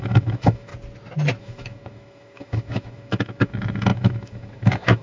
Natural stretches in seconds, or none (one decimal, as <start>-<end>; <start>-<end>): 0.7-1.4